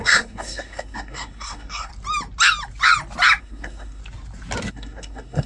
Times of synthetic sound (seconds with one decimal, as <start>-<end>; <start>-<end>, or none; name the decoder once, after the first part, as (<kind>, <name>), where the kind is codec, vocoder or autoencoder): 0.0-1.9 (codec, SNAC); 3.4-4.0; 4.7-5.5